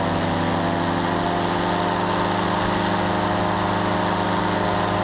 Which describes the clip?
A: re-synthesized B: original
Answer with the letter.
B